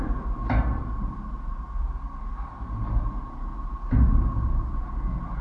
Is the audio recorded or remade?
recorded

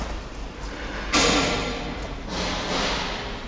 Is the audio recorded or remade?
recorded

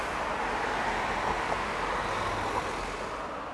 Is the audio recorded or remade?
recorded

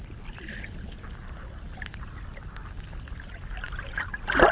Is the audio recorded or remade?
recorded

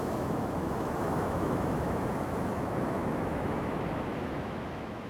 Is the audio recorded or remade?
remade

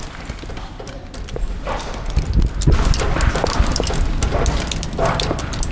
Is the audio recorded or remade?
recorded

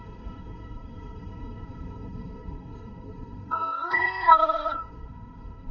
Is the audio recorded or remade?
remade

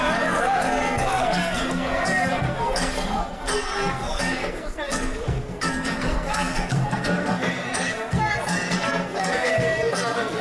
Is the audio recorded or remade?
remade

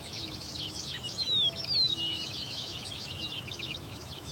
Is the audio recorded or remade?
remade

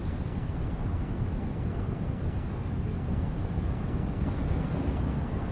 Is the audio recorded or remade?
remade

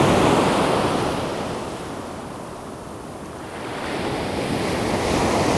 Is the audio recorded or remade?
recorded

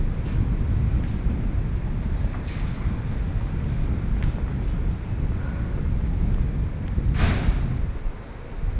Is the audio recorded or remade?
recorded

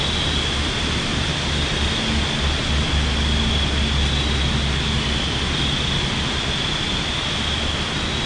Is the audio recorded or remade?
recorded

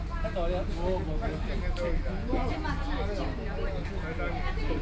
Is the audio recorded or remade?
recorded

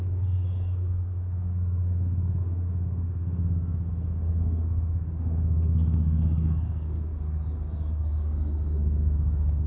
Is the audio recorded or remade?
remade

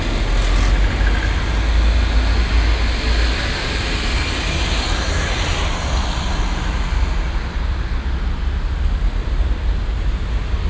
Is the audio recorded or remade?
recorded